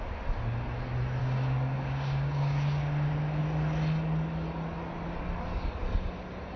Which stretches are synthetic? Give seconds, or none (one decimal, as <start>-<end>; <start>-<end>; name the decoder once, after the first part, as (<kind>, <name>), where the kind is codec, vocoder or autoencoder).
1.2-3.4 (codec, DAC)